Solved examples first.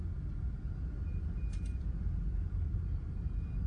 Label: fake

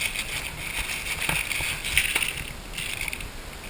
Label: real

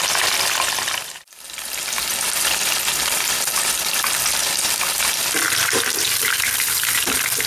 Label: real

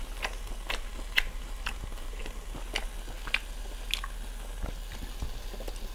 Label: real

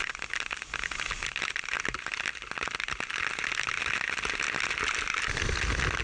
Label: real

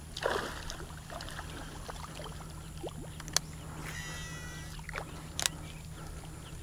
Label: real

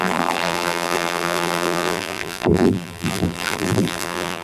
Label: fake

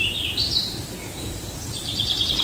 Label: fake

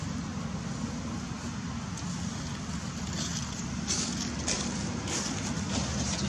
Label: real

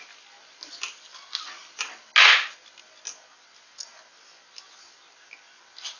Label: real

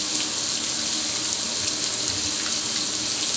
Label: real